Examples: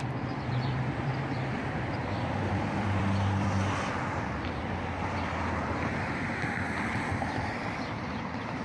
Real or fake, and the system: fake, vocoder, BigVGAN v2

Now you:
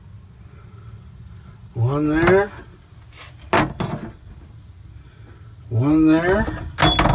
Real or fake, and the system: real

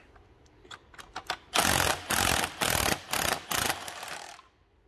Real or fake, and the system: real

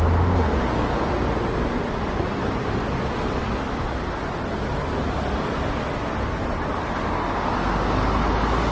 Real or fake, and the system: real